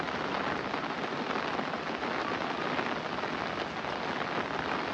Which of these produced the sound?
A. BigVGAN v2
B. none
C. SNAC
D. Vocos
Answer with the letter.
B